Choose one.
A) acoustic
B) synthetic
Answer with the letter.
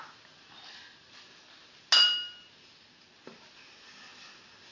A